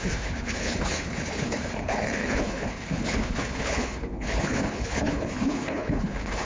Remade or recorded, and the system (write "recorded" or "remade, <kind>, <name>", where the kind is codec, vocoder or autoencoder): remade, codec, HILCodec